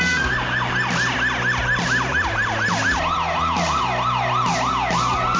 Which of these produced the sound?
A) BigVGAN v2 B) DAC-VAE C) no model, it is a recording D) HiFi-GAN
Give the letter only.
C